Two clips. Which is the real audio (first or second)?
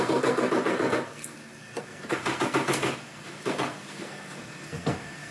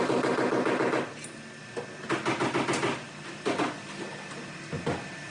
second